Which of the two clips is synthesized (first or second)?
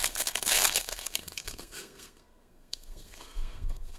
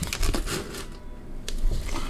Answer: first